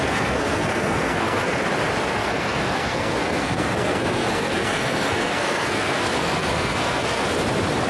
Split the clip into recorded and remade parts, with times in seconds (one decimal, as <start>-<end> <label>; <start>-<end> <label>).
0.0-1.6 remade; 1.6-2.1 recorded; 2.1-7.2 remade; 7.2-7.9 recorded